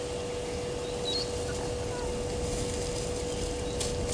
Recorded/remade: recorded